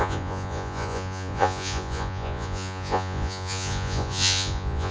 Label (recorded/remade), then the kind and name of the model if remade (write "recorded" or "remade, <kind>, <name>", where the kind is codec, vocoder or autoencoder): remade, vocoder, Vocos